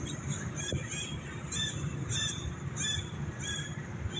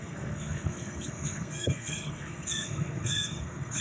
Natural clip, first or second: first